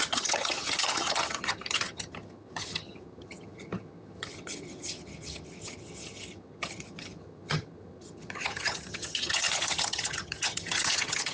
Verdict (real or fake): fake